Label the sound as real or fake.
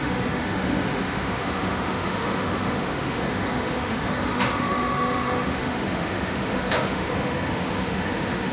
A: fake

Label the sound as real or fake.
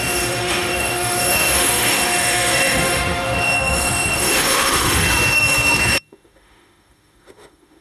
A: fake